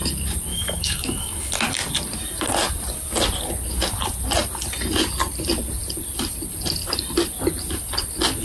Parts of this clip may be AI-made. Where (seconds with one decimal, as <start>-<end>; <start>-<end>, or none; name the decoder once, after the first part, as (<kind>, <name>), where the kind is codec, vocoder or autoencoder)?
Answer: 0.5-1.5 (autoencoder, DAC-VAE)